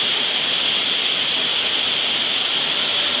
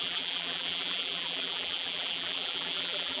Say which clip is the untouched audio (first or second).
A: first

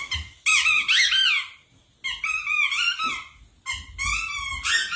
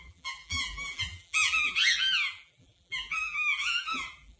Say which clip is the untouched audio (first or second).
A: first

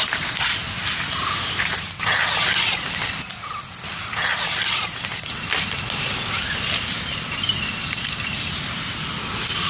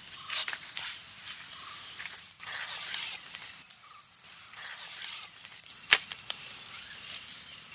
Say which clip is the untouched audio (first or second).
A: first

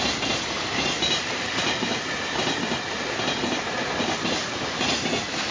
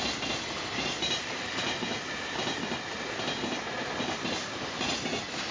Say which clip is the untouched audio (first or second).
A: second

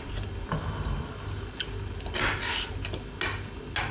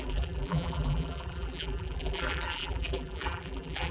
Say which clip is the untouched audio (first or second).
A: first